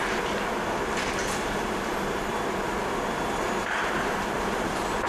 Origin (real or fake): real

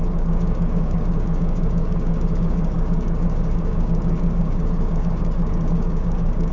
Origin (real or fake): fake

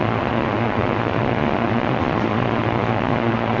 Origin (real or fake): fake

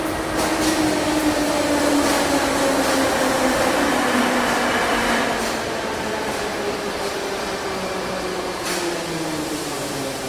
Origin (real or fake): real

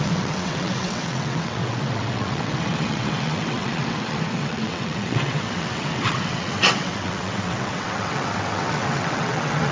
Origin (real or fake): fake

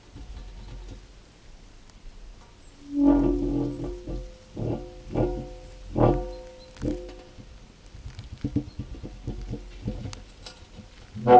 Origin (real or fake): real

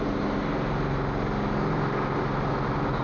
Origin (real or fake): real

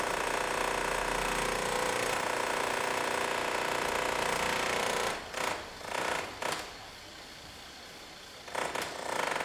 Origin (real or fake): real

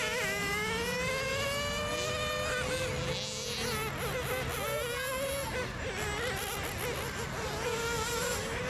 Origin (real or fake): real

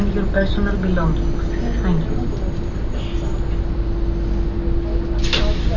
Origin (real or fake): real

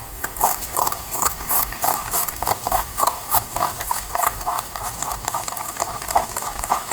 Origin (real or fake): fake